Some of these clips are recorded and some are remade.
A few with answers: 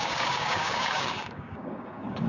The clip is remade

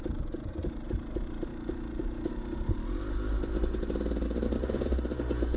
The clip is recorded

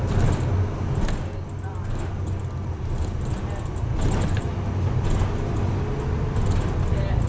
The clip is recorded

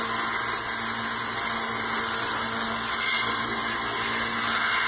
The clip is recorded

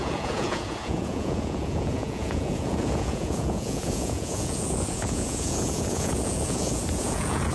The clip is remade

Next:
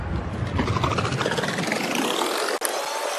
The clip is recorded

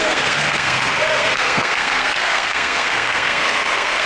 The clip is remade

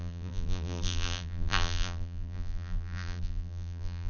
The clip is remade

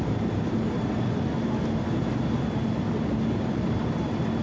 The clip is recorded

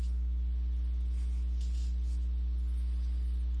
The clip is recorded